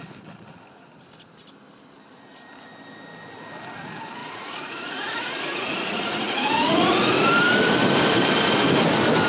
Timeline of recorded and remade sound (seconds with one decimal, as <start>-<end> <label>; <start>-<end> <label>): 0.0-4.2 recorded; 4.2-7.2 remade; 7.2-9.3 recorded